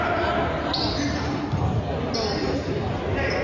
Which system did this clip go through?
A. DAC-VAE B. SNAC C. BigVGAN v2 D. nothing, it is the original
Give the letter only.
D